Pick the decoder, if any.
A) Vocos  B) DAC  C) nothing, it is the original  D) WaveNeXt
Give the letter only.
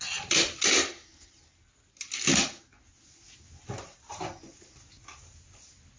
C